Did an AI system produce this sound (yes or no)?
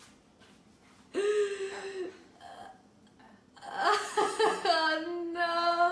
no